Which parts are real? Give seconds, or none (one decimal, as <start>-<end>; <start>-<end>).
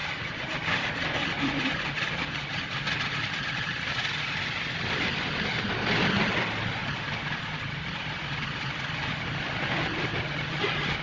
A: 0.0-11.0